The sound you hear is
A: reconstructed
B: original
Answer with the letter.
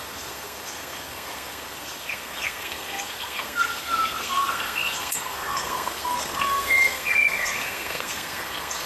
A